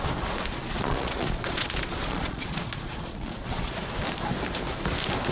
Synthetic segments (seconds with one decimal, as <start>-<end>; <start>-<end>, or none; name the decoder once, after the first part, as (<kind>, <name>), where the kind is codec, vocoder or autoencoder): 0.5-3.7 (vocoder, Vocos)